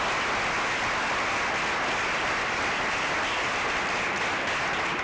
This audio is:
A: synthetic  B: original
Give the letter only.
B